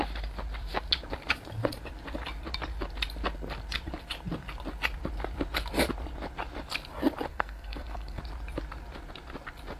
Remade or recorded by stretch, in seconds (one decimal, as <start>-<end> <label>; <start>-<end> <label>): 0.0-7.3 recorded; 7.3-8.2 remade; 8.2-9.8 recorded